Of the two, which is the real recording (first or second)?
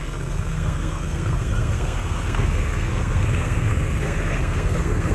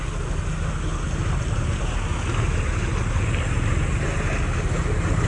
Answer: second